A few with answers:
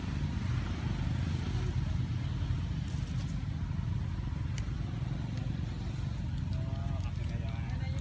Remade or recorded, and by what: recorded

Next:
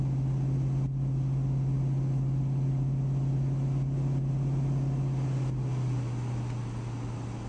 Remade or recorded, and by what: recorded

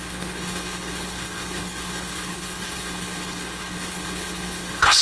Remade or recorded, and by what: remade, codec, HILCodec